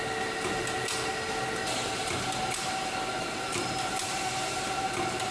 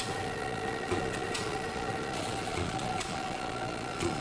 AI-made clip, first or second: second